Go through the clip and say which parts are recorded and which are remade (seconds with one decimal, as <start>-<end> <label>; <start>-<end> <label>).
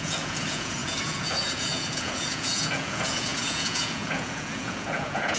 0.0-5.4 remade